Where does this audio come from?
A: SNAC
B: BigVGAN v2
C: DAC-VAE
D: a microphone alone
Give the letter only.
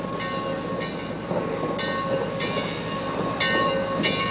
D